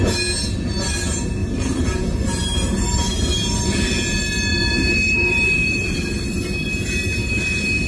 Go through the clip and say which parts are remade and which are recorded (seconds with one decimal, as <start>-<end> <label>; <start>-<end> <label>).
0.0-1.4 recorded; 1.4-3.5 remade; 3.5-4.5 recorded; 4.5-6.0 remade; 6.0-7.9 recorded

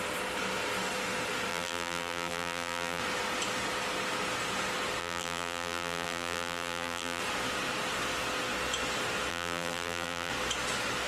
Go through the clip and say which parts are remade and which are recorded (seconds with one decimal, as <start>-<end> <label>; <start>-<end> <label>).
0.0-1.5 recorded; 1.5-3.0 remade; 3.0-5.0 recorded; 5.0-7.2 remade; 7.2-9.3 recorded; 9.3-10.3 remade; 10.3-11.1 recorded

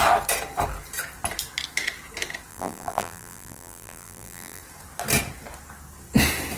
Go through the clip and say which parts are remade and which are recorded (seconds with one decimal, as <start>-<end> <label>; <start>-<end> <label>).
0.0-2.5 recorded; 2.5-4.6 remade; 4.6-6.6 recorded

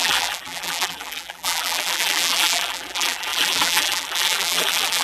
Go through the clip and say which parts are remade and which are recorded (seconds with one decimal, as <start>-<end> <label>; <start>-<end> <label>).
0.0-5.0 remade

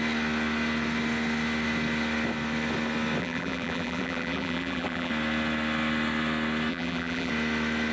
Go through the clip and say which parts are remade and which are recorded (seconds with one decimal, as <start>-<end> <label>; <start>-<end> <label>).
0.0-3.2 recorded; 3.2-5.1 remade; 5.1-6.7 recorded; 6.7-7.3 remade; 7.3-7.9 recorded

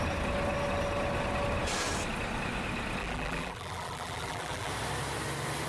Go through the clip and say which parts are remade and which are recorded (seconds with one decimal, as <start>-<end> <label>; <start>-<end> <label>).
0.0-3.0 recorded; 3.0-4.7 remade; 4.7-5.7 recorded

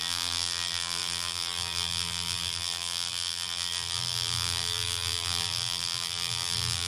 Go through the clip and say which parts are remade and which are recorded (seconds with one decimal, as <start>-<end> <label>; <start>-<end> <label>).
0.0-6.9 remade